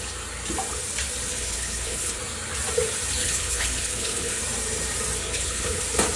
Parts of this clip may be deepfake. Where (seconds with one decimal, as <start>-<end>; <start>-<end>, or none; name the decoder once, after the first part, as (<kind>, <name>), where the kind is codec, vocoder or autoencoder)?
1.3-2.2 (codec, HILCodec); 3.2-4.4; 5.2-5.8